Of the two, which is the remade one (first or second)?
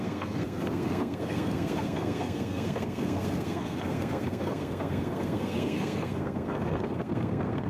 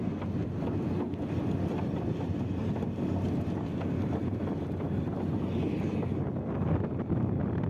first